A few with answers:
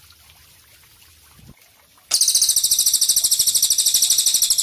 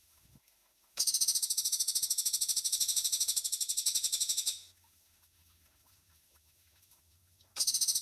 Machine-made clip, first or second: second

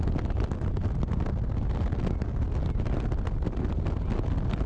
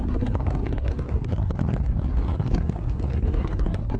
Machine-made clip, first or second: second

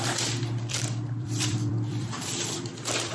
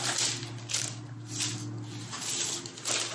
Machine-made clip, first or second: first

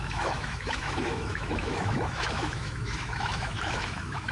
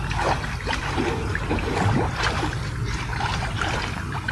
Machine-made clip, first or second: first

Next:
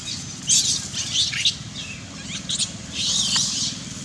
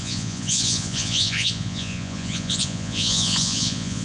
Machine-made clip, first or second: second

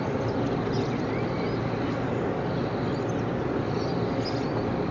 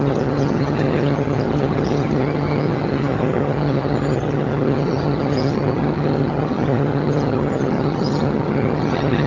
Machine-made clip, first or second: second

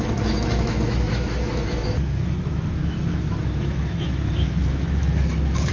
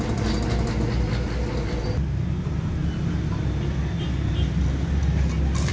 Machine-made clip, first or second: first